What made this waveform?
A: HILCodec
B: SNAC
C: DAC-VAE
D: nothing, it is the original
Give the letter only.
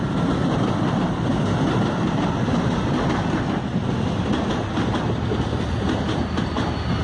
D